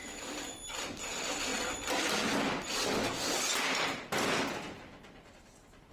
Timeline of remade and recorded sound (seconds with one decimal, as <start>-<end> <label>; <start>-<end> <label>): 0.0-1.5 remade; 1.5-4.6 recorded; 4.6-5.9 remade